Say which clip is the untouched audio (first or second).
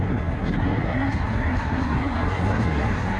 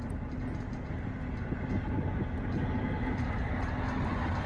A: second